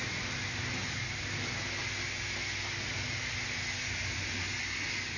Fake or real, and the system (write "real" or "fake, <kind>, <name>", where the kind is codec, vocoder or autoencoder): real